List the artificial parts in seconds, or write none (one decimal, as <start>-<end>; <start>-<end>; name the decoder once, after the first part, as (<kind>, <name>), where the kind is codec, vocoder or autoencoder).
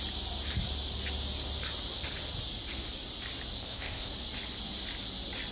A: 3.6-4.1 (codec, ZipCodec)